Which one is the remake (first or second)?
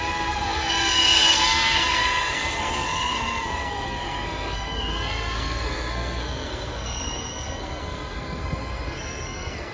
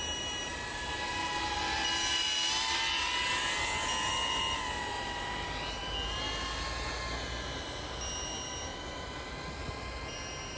first